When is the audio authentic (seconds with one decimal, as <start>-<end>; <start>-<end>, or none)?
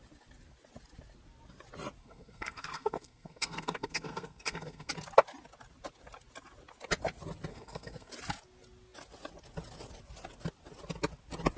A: 0.0-2.0; 4.9-7.5; 8.1-11.6